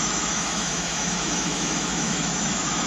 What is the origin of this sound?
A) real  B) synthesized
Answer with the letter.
B